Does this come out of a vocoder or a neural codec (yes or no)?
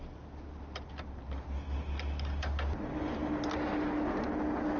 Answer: no